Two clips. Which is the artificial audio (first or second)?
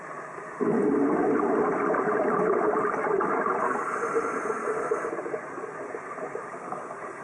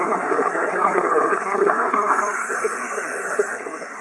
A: second